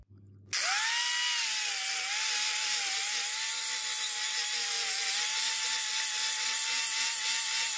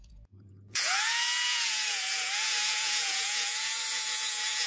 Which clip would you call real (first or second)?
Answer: first